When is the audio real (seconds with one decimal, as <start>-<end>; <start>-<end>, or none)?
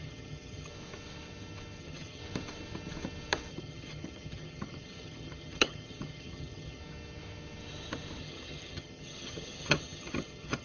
0.7-1.8; 2.2-3.5; 6.8-8.2